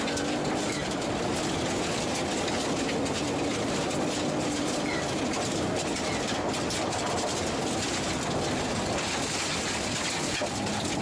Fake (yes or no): no